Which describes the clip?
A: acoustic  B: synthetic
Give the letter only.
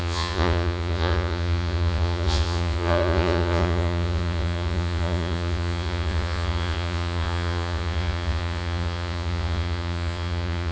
B